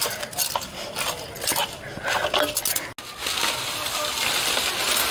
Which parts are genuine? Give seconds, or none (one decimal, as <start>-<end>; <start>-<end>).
0.0-5.1